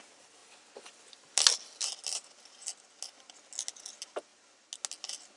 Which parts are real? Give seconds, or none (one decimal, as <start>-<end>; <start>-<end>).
0.0-5.4